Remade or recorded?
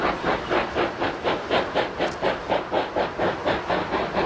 recorded